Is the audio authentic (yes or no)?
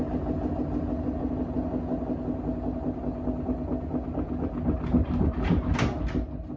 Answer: yes